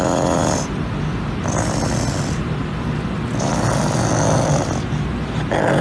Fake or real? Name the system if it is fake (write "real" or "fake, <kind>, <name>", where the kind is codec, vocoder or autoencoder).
real